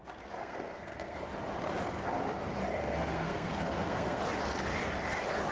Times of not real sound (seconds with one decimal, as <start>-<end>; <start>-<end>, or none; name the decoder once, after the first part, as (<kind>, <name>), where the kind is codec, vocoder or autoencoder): 0.4-1.2 (codec, SNAC); 2.8-4.2